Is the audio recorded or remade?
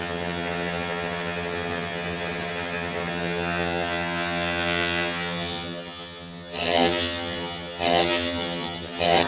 remade